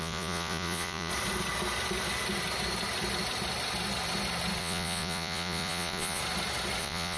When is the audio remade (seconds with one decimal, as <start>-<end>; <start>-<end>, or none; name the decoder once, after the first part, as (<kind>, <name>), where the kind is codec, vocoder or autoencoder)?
0.0-1.1 (vocoder, Vocos); 4.6-6.2; 6.8-7.2